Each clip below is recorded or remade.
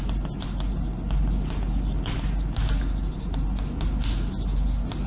recorded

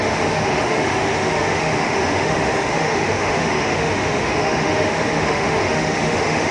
remade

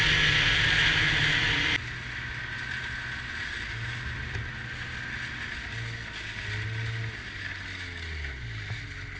recorded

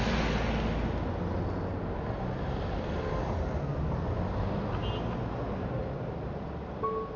recorded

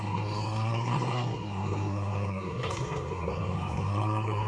remade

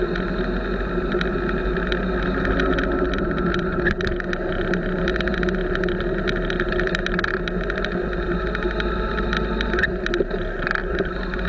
recorded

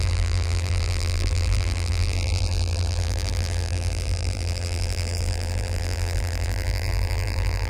remade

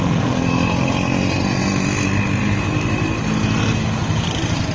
recorded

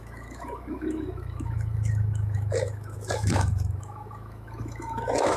remade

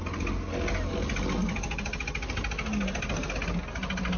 recorded